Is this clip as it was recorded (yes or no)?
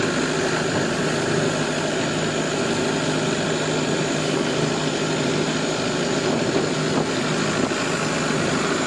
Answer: yes